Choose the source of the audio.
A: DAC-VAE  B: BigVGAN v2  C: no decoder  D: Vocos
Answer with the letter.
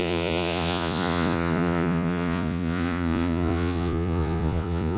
D